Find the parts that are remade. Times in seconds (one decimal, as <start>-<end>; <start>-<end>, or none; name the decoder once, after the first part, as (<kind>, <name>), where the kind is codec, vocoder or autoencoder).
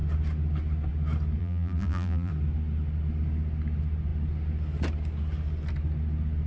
1.4-2.3 (vocoder, BigVGAN v2)